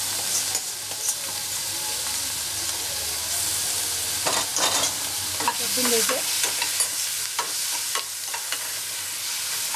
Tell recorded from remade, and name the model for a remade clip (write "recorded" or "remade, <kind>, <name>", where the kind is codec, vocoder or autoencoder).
recorded